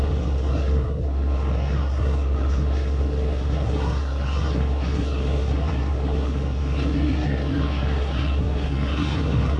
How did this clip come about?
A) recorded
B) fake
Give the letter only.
B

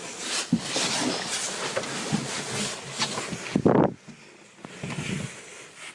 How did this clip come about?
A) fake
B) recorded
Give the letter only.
B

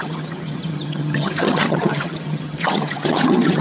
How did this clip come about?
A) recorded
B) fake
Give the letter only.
B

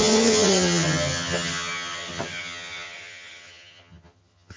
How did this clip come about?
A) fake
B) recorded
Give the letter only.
A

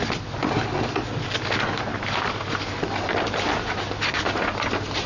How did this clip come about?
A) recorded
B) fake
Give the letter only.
A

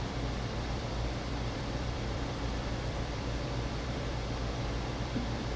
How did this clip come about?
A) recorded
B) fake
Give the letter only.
B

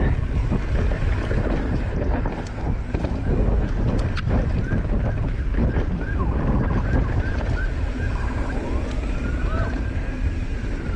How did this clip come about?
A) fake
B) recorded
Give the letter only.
B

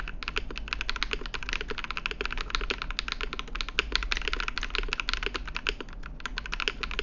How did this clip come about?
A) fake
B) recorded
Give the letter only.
B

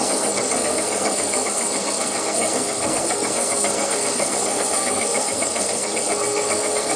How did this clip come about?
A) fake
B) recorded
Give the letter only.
A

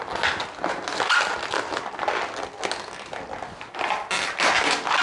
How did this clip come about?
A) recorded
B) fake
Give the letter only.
A